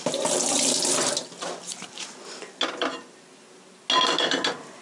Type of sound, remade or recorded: recorded